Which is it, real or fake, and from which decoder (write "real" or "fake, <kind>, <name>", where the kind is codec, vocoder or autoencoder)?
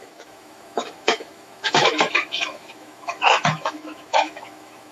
fake, autoencoder, DAC-VAE